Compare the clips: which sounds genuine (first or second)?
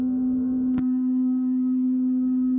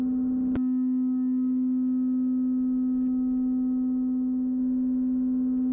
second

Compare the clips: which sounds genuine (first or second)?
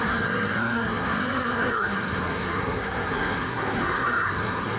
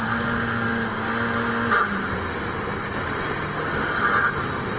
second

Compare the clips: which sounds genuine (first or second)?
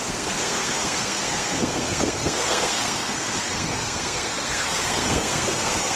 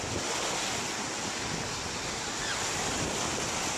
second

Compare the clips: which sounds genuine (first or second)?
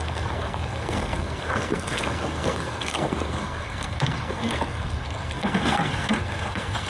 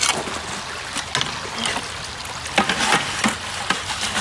second